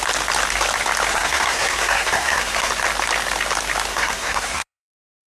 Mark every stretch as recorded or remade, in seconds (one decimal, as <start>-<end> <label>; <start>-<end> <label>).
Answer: 0.0-1.1 recorded; 1.1-2.7 remade; 2.7-3.9 recorded; 3.9-5.3 remade